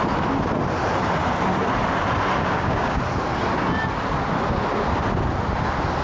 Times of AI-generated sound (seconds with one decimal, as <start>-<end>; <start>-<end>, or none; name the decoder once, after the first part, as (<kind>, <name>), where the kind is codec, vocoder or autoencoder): 2.4-3.0 (codec, DAC)